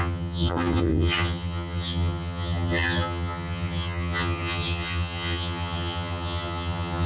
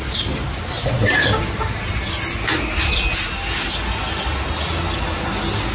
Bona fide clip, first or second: second